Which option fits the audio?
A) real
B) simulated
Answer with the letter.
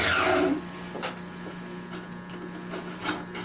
A